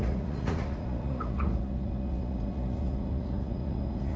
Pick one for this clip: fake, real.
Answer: fake